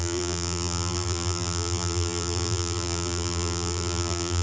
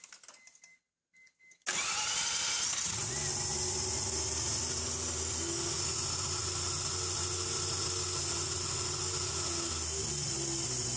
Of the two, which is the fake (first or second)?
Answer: first